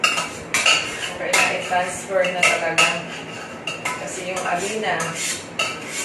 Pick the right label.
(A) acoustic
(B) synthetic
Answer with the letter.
A